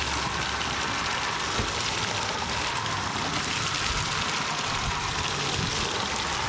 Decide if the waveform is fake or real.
real